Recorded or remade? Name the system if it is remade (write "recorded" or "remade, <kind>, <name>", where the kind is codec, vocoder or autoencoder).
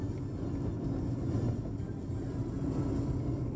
recorded